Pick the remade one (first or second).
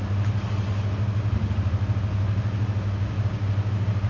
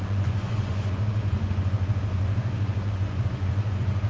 second